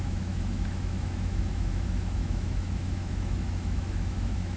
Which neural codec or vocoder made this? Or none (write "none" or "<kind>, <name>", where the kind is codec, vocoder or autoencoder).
autoencoder, DAC-VAE